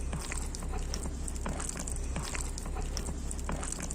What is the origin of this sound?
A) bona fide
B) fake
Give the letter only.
A